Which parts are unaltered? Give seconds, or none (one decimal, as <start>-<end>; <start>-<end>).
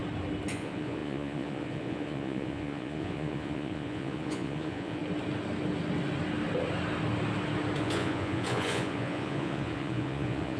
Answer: 0.0-0.5; 5.0-7.8